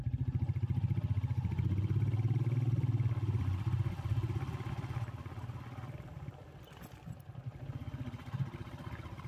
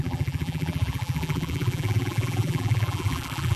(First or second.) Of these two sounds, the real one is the first